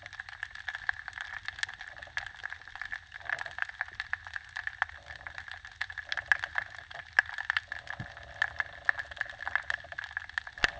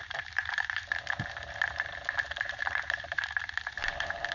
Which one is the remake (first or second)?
second